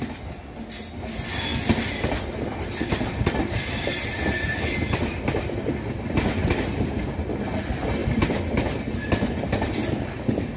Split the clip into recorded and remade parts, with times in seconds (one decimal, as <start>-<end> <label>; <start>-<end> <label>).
0.0-1.5 recorded; 1.5-6.3 remade; 6.3-8.0 recorded; 8.0-8.9 remade; 8.9-10.6 recorded